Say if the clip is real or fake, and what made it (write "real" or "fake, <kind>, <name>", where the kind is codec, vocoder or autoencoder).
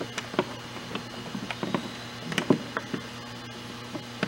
real